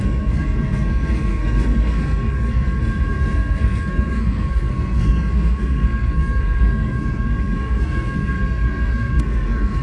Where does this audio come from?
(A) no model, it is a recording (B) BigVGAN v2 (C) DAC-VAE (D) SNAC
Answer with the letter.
D